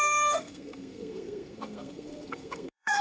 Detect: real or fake fake